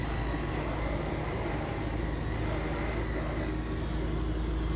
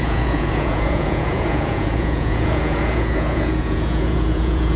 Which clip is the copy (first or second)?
second